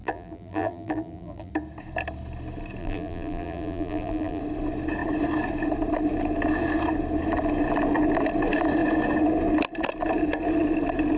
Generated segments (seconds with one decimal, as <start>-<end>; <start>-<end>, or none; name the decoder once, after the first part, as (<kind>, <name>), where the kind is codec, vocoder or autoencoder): 0.0-1.5 (vocoder, BigVGAN v2); 2.8-4.4